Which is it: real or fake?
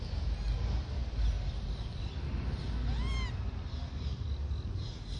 real